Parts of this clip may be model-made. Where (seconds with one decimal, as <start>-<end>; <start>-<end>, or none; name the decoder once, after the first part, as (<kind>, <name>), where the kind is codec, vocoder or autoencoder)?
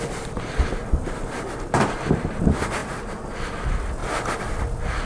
none